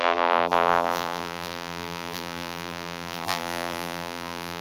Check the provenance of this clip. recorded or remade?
remade